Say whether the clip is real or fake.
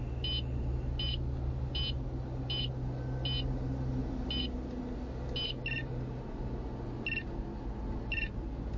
real